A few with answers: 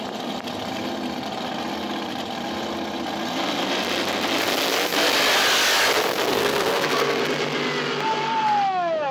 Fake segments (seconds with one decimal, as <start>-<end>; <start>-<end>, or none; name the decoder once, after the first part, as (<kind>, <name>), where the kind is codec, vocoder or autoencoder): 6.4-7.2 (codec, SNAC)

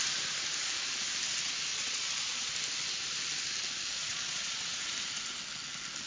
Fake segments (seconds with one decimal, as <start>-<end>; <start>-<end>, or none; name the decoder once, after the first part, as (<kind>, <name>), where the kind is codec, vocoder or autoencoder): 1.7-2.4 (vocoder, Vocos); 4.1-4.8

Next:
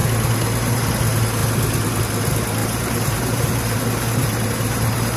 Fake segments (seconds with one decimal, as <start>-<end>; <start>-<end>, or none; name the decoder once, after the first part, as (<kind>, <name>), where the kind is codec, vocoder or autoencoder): 2.6-5.2 (vocoder, BigVGAN v2)

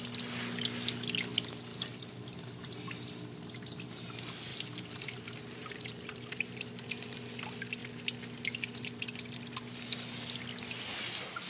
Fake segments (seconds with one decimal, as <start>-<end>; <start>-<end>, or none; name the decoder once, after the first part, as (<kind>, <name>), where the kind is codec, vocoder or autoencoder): 1.7-2.8 (vocoder, BigVGAN v2); 4.5-6.8

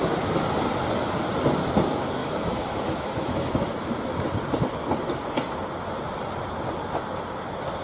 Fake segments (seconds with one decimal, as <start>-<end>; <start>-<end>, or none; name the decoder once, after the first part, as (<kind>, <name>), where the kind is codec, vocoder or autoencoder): 2.2-3.5 (autoencoder, DAC-VAE)

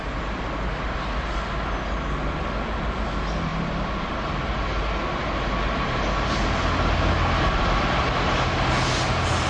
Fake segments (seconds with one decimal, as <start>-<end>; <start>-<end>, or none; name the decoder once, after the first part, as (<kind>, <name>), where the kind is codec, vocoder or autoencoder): none

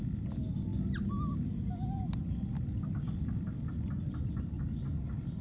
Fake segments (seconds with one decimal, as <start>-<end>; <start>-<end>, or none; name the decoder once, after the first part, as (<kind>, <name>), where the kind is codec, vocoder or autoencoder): none

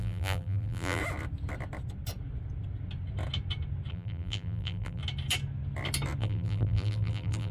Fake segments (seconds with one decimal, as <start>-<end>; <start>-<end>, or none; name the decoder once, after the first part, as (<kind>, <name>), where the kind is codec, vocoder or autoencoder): 0.0-1.0 (vocoder, BigVGAN v2); 3.9-5.0; 6.2-7.5